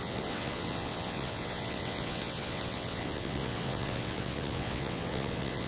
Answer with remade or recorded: remade